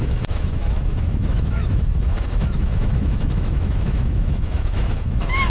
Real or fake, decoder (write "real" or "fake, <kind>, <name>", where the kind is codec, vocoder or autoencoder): fake, autoencoder, DAC-VAE